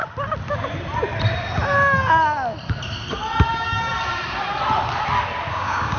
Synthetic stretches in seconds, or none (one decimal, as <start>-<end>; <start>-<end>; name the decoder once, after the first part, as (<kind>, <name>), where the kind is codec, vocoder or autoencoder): 3.5-3.9 (codec, DAC); 5.5-6.0

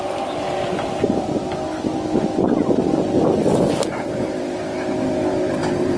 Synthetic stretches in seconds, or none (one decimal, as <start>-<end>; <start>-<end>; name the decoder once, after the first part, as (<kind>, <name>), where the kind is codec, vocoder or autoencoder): 0.0-1.4 (vocoder, BigVGAN v2); 3.6-6.0

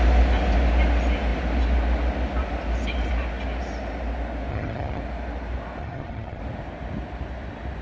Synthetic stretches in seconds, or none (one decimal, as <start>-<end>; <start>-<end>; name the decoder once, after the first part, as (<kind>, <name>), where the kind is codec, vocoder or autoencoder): 4.5-5.0 (vocoder, HiFi-GAN); 5.8-6.4